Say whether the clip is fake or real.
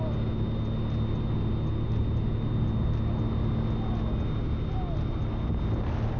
real